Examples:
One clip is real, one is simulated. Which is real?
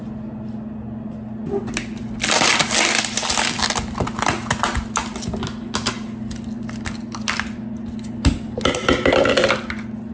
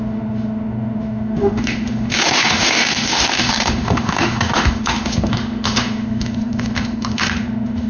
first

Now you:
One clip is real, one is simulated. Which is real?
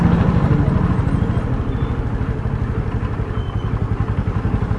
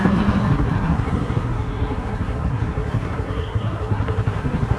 first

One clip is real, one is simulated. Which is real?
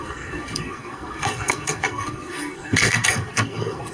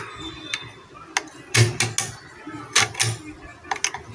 second